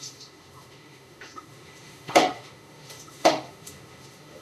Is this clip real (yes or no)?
no